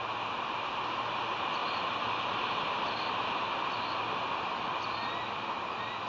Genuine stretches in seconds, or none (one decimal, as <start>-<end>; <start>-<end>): 0.0-6.1

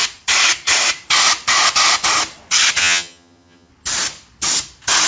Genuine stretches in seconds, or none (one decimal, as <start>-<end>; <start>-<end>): 0.0-2.8; 3.7-5.1

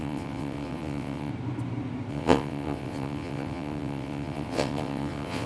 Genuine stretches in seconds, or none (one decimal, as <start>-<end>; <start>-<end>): 1.3-2.1

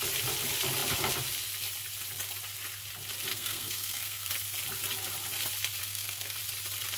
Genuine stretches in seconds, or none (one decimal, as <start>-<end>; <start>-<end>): 0.0-3.3; 4.3-5.8; 6.4-7.0

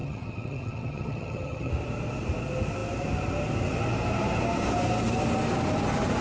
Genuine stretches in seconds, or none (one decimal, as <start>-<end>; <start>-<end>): 1.7-6.2

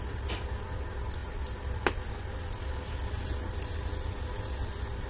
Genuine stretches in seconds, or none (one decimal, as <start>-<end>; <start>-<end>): 0.0-5.1

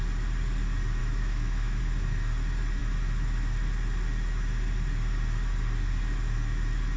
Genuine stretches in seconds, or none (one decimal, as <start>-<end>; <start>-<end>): 0.0-1.0; 1.8-7.0

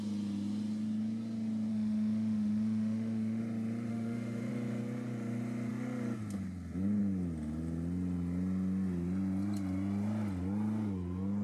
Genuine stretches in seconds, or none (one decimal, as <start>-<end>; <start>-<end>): 0.0-1.7; 3.4-3.9; 4.5-11.4